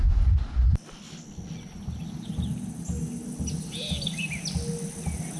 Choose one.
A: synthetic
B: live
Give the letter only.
B